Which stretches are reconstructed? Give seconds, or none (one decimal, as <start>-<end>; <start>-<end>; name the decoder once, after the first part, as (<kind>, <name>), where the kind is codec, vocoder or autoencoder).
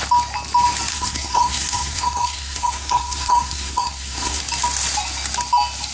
0.9-4.4 (codec, SNAC)